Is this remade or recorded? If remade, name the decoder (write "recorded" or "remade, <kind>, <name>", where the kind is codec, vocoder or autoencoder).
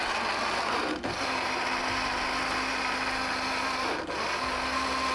recorded